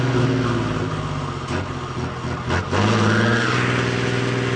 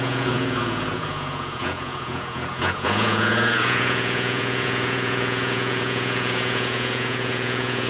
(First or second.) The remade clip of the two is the second